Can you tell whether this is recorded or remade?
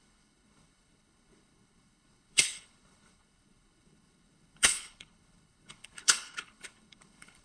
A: remade